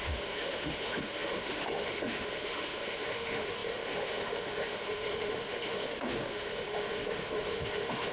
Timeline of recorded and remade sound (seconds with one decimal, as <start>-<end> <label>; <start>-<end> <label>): 0.0-8.1 remade